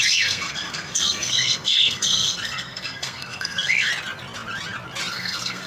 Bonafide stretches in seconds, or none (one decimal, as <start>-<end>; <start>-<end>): 3.9-5.1